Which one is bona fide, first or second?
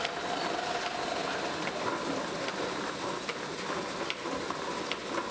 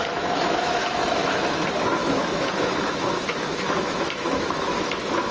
first